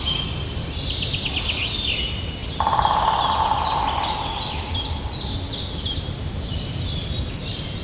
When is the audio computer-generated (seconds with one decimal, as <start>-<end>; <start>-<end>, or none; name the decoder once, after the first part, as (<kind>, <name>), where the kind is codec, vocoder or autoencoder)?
none